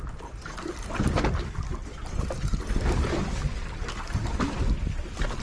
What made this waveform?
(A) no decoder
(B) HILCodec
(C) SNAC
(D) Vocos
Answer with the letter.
A